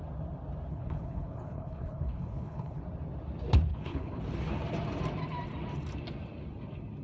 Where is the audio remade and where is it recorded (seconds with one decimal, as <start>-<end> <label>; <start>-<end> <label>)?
0.0-0.7 recorded; 0.7-2.8 remade; 2.8-3.7 recorded; 3.7-4.2 remade; 4.2-7.0 recorded